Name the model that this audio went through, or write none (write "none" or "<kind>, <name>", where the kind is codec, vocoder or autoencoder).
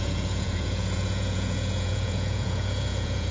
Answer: vocoder, Vocos